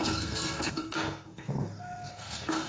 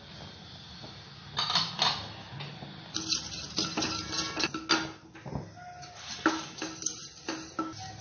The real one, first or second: second